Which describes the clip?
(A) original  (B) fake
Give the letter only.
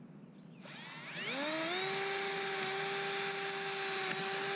A